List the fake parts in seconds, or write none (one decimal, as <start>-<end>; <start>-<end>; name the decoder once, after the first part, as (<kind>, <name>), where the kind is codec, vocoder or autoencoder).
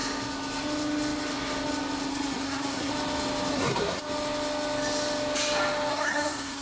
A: 2.1-2.9 (codec, SNAC); 3.5-4.0; 5.9-6.6